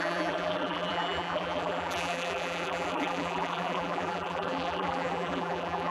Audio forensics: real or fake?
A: fake